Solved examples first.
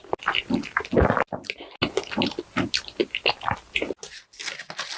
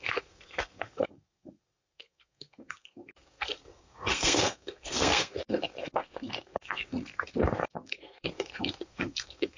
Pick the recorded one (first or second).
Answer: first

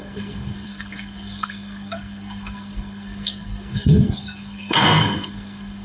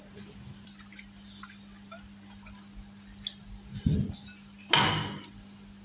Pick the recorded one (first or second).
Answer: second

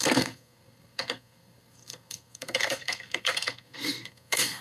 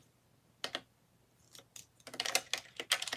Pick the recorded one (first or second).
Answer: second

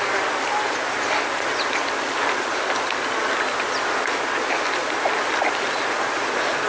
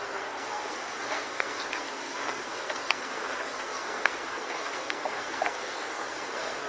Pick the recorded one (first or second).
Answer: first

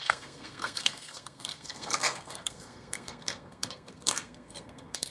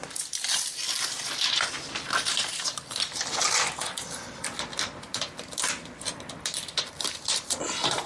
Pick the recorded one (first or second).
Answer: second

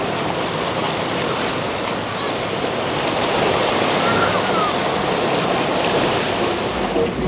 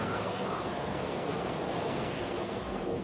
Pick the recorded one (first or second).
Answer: first